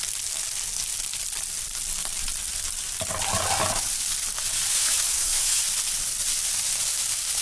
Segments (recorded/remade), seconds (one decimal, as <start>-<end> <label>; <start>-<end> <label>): 0.0-4.7 recorded; 4.7-5.6 remade; 5.6-7.4 recorded